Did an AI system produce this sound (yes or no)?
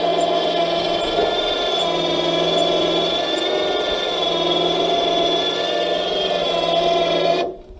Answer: no